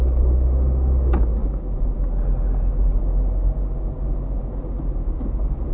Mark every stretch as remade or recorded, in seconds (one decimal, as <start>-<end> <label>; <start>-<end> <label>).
0.0-5.7 recorded